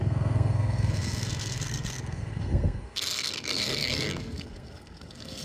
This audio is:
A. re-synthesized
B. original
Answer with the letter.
A